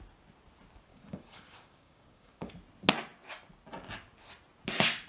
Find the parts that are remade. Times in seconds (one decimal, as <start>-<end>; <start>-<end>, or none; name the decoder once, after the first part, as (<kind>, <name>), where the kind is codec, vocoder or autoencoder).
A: 0.9-2.5 (codec, DAC)